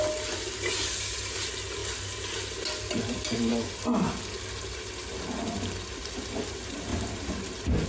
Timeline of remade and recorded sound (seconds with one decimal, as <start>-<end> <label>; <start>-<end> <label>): 0.0-7.9 recorded